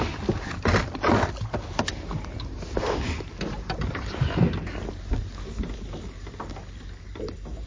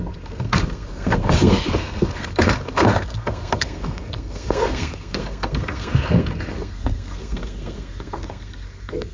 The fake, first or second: second